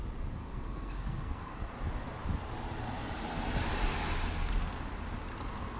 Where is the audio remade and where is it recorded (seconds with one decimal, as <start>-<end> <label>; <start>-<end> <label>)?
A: 0.0-0.4 recorded; 0.4-1.7 remade; 1.7-5.8 recorded